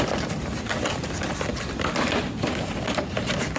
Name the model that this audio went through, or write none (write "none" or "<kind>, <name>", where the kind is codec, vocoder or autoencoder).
vocoder, BigVGAN v2